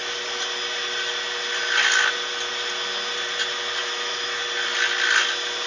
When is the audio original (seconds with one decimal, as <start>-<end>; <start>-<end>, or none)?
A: 0.0-3.8; 4.4-5.7